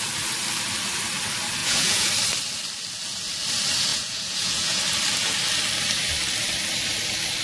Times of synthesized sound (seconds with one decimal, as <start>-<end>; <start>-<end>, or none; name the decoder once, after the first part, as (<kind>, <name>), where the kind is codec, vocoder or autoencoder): 1.6-2.1 (vocoder, Vocos); 3.9-4.8